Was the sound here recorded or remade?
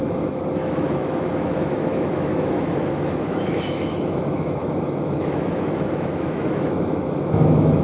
remade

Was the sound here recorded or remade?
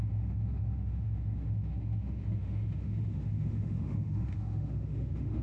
remade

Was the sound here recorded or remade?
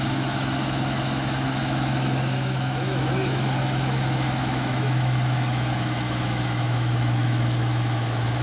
remade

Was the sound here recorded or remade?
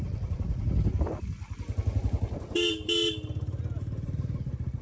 recorded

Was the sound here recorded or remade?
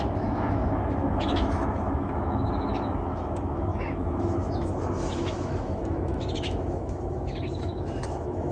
remade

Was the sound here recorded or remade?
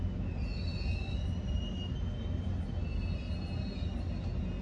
recorded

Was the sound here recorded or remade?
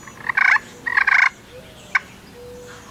recorded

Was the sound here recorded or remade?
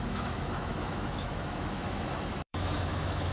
remade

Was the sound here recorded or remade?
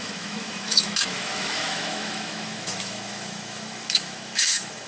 remade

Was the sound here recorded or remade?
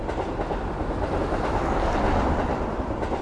recorded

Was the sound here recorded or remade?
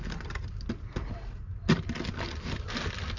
recorded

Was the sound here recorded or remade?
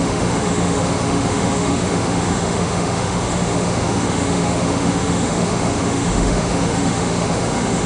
remade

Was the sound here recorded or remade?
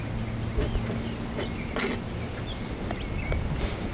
recorded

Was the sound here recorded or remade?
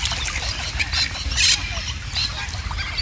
recorded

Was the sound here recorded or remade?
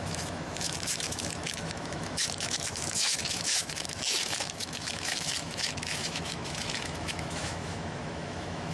remade